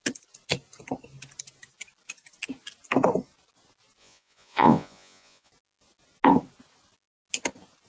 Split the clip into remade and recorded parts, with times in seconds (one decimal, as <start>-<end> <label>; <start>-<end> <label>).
0.0-4.0 recorded; 4.0-5.5 remade; 5.5-7.9 recorded